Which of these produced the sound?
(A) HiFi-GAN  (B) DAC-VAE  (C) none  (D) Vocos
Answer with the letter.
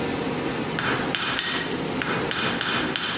C